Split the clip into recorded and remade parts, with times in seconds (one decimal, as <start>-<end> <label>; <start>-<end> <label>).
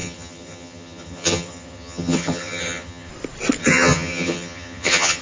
0.0-3.1 remade; 3.1-3.6 recorded; 3.6-5.2 remade